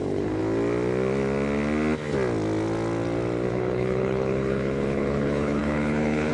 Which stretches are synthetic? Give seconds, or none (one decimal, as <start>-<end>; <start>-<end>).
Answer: 0.0-0.4; 3.5-6.3